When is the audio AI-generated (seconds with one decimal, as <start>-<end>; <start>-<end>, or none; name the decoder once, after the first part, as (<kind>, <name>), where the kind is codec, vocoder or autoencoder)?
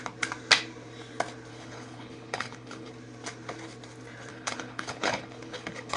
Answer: 1.5-2.9 (codec, HILCodec); 4.3-6.0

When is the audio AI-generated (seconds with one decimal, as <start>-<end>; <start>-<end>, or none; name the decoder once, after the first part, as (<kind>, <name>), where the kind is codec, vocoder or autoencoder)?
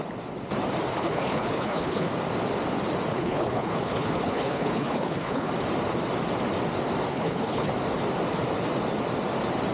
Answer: 0.9-2.1 (codec, HILCodec); 3.1-5.5; 7.1-7.7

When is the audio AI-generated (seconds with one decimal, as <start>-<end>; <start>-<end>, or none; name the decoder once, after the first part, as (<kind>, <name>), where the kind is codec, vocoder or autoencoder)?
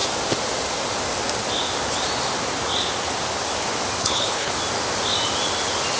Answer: 4.0-4.5 (codec, HILCodec)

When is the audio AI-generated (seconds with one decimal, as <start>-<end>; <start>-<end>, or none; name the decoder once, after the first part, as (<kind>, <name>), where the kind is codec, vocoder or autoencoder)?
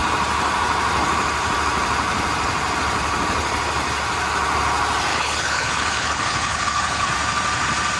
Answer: 5.1-7.1 (codec, HILCodec)